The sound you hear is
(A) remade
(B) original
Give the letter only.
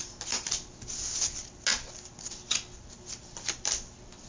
B